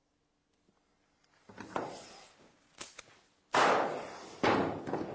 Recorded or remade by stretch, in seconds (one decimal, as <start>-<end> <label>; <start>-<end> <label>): 0.0-5.1 recorded